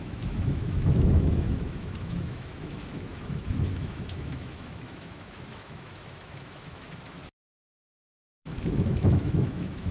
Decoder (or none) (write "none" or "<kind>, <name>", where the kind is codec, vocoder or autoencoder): autoencoder, DAC-VAE